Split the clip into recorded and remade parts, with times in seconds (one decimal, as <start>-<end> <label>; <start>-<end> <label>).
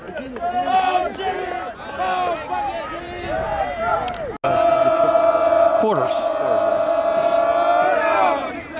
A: 0.0-8.8 recorded